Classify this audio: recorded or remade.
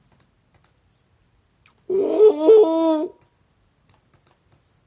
recorded